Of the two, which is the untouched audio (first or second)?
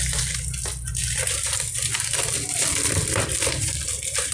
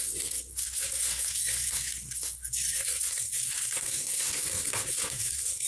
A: first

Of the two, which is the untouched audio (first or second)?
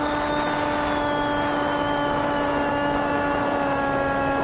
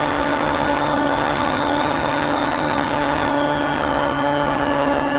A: first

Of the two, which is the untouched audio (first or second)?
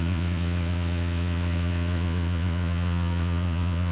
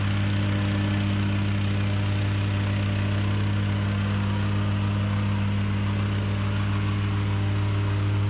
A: second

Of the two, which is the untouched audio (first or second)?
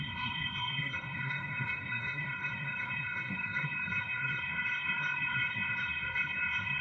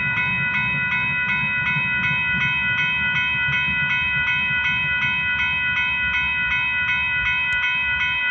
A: second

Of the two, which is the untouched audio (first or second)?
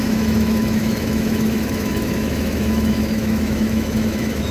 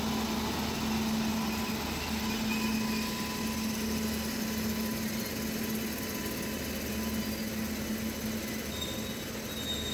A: second